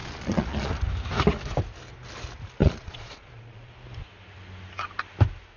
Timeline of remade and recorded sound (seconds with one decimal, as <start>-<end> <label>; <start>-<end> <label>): 0.0-0.7 remade; 0.7-2.6 recorded; 2.6-3.7 remade; 3.7-5.6 recorded